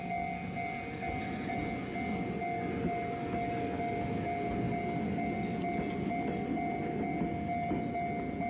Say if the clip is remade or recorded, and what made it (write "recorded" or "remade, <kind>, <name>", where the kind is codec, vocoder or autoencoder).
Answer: recorded